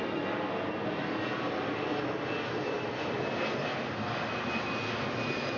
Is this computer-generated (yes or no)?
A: no